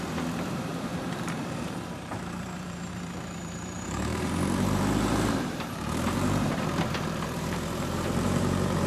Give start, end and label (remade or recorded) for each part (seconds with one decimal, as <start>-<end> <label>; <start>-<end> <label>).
0.0-8.9 remade